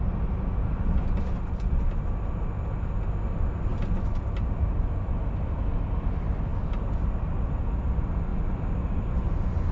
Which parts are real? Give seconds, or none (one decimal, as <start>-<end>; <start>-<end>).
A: 0.0-9.7